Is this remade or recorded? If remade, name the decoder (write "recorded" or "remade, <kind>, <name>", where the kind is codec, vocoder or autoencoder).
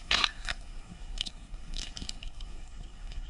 remade, codec, SNAC